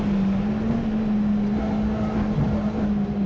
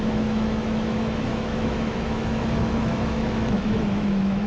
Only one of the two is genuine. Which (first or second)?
first